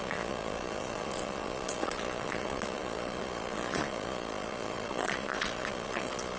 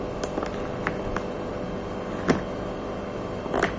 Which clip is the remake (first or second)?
first